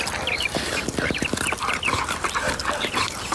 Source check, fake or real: real